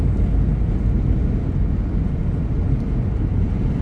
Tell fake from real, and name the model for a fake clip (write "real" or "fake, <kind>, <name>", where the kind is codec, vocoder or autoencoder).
real